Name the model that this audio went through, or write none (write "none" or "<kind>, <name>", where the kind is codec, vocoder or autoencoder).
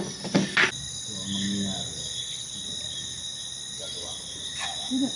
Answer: none